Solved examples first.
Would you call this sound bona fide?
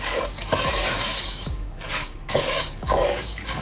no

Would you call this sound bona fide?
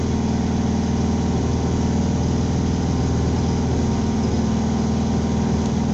yes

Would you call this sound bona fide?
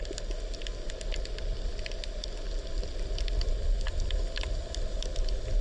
yes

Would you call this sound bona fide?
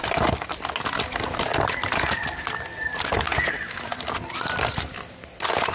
yes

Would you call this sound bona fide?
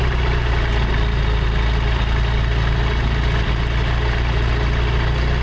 yes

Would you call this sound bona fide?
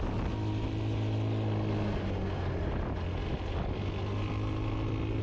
yes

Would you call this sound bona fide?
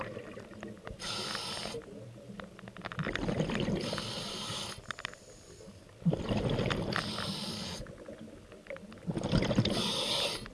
yes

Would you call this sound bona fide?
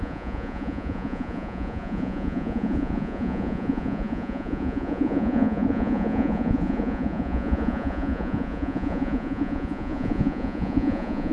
no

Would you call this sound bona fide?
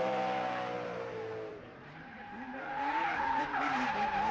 no